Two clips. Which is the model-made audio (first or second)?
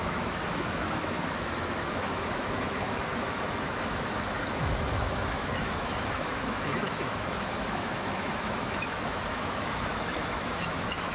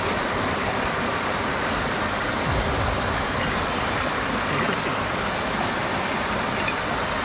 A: first